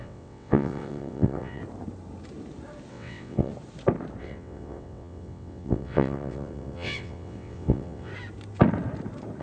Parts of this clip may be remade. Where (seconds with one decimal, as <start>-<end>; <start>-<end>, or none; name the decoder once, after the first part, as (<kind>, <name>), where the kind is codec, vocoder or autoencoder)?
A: 0.0-1.6 (vocoder, WaveNeXt); 2.9-3.5; 4.2-8.1